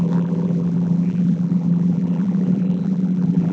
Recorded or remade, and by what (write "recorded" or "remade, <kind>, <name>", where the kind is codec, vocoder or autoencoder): remade, vocoder, BigVGAN v2